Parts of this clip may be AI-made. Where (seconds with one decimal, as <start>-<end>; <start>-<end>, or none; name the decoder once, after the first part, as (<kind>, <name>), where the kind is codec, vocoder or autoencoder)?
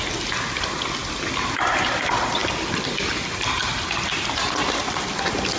2.4-4.1 (vocoder, BigVGAN v2)